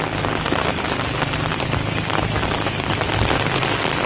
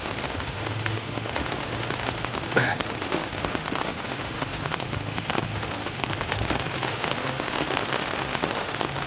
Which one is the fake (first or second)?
second